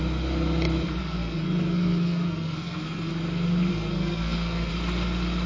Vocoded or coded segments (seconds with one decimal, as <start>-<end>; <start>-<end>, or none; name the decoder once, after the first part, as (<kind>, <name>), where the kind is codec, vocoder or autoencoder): 1.0-3.1 (codec, SNAC); 3.7-4.7